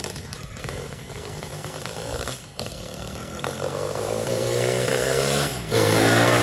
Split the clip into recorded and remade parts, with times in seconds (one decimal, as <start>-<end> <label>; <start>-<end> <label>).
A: 0.0-6.4 remade